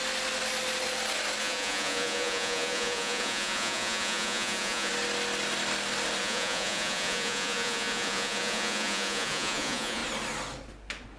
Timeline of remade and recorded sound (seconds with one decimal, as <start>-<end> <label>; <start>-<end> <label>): 0.0-1.4 recorded; 1.4-4.9 remade; 4.9-6.2 recorded; 6.2-10.0 remade; 10.0-11.2 recorded